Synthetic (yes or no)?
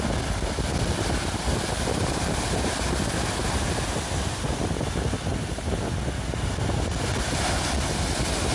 no